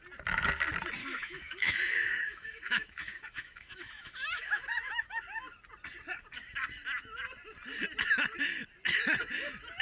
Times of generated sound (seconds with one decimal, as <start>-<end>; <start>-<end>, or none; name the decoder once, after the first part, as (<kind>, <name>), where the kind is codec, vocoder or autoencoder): 1.0-5.2 (autoencoder, DAC-VAE)